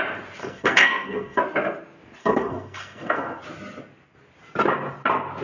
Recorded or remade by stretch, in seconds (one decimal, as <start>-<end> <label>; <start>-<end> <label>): 0.0-0.4 recorded; 0.4-1.4 remade; 1.4-2.2 recorded; 2.2-3.4 remade; 3.4-5.4 recorded